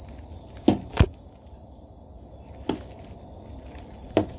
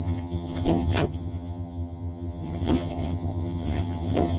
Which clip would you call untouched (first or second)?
first